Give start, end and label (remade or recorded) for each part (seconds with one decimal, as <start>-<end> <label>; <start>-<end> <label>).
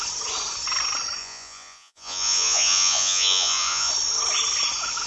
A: 0.0-1.2 recorded; 1.2-3.9 remade; 3.9-5.1 recorded